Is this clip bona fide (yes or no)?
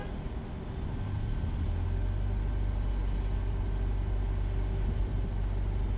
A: yes